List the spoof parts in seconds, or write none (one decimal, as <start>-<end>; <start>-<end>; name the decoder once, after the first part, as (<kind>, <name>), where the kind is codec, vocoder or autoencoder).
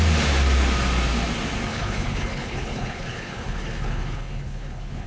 1.7-5.1 (codec, HILCodec)